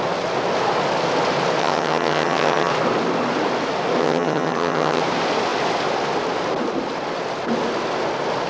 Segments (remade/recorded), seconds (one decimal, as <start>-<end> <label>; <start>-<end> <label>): 0.0-1.6 recorded; 1.6-2.7 remade; 2.7-4.0 recorded; 4.0-5.0 remade; 5.0-8.5 recorded